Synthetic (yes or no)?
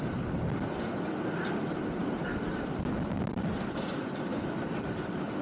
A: no